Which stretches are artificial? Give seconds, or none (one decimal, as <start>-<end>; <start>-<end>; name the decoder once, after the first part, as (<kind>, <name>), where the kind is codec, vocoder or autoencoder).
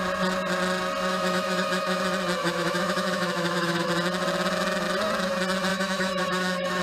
1.1-2.0 (autoencoder, DAC-VAE); 2.4-3.9; 5.7-6.8